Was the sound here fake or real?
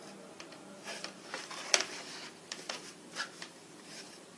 fake